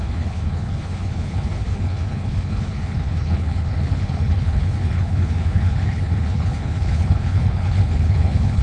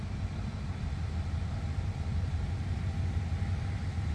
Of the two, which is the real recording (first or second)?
second